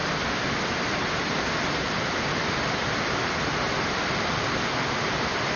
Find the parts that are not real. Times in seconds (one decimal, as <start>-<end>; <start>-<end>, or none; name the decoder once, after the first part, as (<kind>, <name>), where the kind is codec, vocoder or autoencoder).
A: none